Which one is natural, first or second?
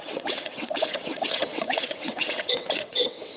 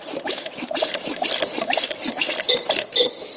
second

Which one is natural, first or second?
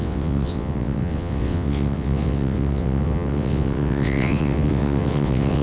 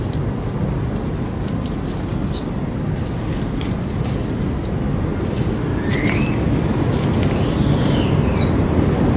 second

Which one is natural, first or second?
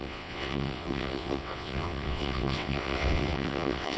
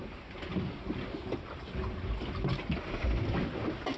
second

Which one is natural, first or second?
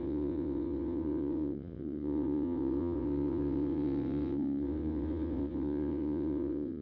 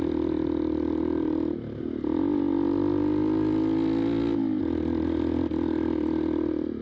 second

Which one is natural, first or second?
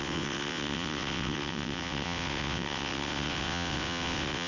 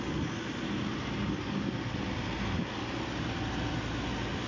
second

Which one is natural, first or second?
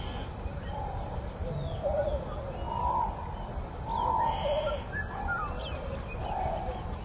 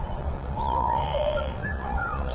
first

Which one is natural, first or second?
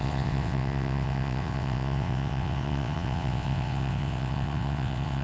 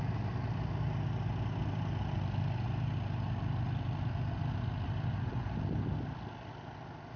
second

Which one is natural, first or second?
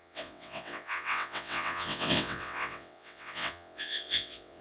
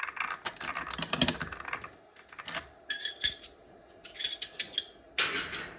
second